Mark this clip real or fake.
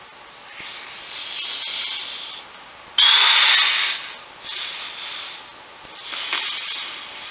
real